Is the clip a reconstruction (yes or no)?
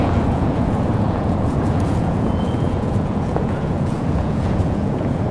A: yes